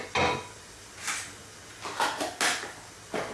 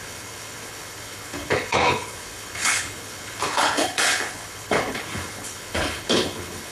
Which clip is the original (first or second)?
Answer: first